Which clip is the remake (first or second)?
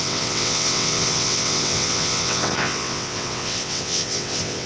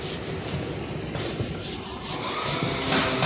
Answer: first